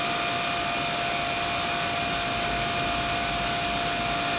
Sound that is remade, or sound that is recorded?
recorded